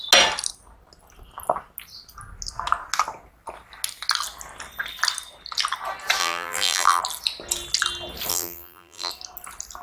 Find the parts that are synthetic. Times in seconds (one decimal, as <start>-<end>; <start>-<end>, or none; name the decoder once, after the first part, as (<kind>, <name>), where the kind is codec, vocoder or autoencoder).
6.2-7.0 (vocoder, BigVGAN v2); 8.3-9.1